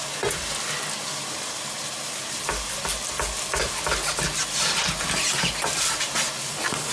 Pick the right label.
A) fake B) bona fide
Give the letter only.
B